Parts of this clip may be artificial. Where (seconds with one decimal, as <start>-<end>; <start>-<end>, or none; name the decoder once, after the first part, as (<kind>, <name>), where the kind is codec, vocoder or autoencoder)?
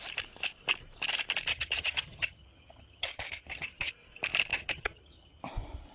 1.5-3.9 (vocoder, HiFi-GAN); 4.5-5.4